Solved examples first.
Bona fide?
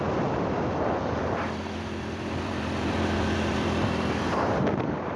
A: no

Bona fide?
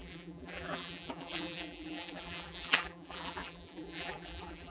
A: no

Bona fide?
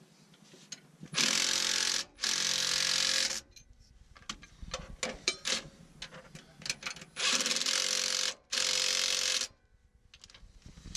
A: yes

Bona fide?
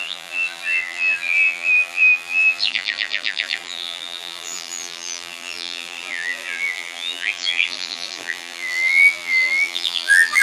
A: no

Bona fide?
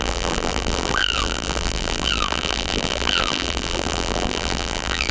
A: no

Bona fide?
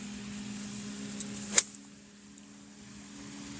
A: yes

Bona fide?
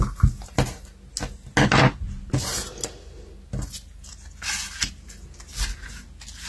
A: yes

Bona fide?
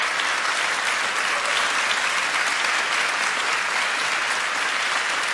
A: yes